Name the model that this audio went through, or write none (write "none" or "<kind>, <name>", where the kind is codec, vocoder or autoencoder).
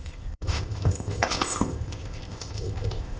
codec, ZipCodec